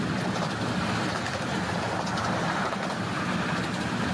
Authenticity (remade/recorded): recorded